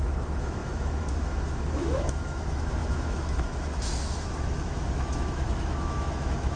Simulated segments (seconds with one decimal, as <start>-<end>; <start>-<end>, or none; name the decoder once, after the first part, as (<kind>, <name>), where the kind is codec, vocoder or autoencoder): 0.0-6.6 (autoencoder, DAC-VAE)